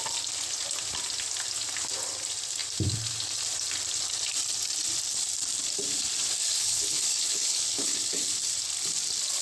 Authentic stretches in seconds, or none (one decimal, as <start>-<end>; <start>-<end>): 0.0-6.4; 8.1-9.4